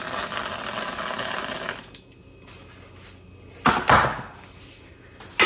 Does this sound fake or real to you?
real